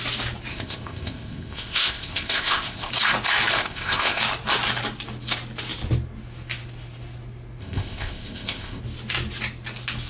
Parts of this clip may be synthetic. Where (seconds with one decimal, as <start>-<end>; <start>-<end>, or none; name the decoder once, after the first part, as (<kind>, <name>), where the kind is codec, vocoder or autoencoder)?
0.5-2.9 (codec, ZipCodec); 3.6-4.2; 7.6-8.8